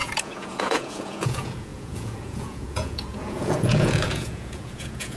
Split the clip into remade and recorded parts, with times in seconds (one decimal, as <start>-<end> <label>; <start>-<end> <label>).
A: 0.0-5.2 remade